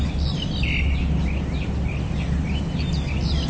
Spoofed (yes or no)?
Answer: no